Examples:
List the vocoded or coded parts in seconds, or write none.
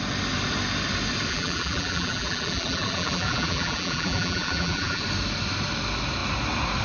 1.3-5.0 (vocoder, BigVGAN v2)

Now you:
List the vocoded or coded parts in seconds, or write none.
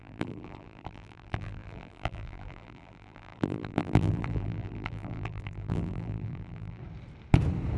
0.0-6.8 (vocoder, BigVGAN v2)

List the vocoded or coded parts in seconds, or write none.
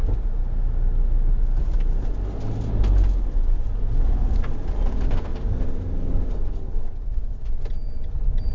5.3-6.1 (vocoder, BigVGAN v2)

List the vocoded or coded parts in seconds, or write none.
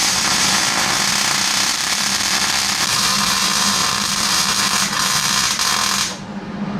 0.0-0.9 (vocoder, BigVGAN v2); 1.7-3.3; 3.8-5.3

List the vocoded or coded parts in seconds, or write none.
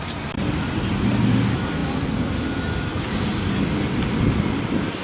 none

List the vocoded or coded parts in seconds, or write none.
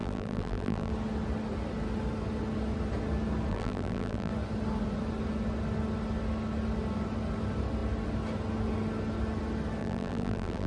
0.0-0.9 (vocoder, BigVGAN v2); 3.5-4.3; 9.8-10.7